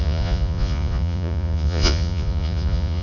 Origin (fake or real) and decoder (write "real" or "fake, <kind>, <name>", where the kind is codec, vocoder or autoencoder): fake, vocoder, Vocos